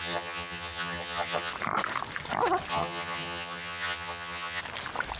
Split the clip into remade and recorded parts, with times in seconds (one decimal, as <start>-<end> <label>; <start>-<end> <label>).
0.0-1.5 remade; 1.5-2.7 recorded; 2.7-4.6 remade; 4.6-5.2 recorded